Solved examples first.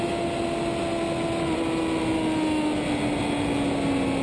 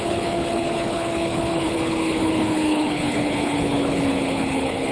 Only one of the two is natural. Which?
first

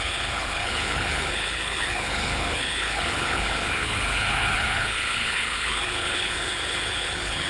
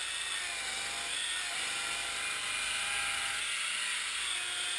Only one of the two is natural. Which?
second